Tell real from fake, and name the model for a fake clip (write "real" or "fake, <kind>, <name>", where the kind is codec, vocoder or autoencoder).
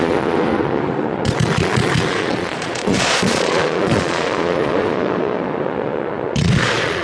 fake, vocoder, Vocos